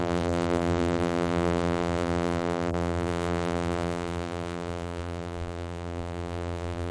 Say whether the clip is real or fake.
fake